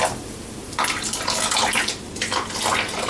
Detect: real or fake real